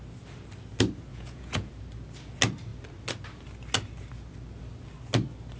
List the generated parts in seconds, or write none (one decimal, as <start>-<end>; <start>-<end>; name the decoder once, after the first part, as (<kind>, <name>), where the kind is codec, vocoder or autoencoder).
1.1-1.7 (vocoder, Vocos)